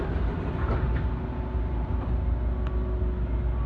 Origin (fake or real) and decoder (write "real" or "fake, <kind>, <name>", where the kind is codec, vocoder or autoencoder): real